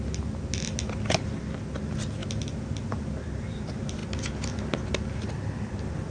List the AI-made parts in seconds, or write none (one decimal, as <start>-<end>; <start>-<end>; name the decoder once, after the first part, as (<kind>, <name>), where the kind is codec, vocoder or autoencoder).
none